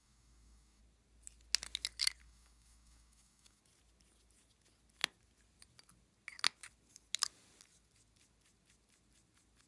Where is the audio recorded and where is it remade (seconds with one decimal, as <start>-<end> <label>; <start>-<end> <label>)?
0.0-0.8 remade; 0.8-2.2 recorded; 2.2-3.6 remade; 3.6-9.7 recorded